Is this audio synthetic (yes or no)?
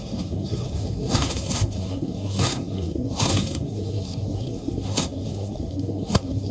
yes